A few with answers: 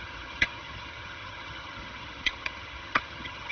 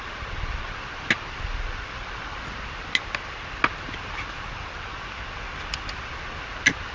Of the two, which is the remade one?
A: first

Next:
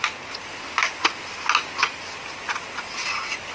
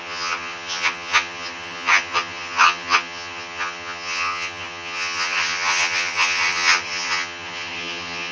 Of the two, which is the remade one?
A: second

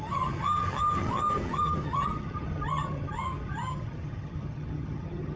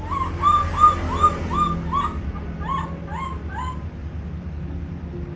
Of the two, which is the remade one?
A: first